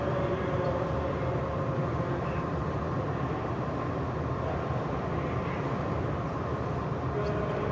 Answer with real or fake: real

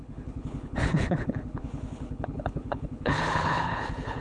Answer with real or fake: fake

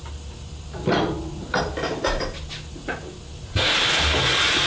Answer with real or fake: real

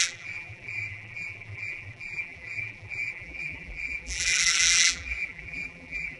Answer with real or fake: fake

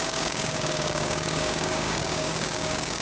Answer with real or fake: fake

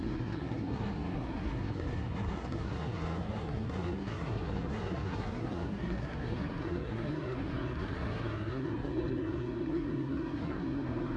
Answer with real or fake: fake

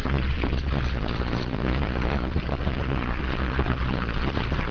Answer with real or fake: fake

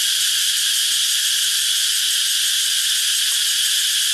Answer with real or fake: fake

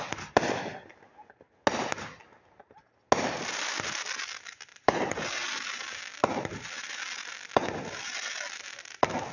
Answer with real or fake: real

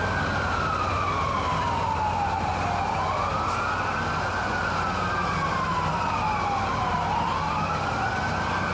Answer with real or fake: real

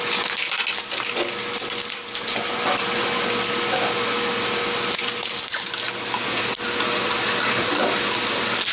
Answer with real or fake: real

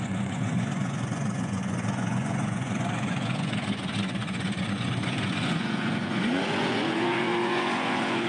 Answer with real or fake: fake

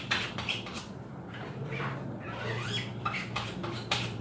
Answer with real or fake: fake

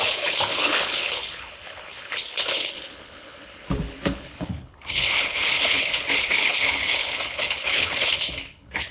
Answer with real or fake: fake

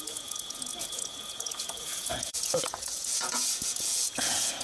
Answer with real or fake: fake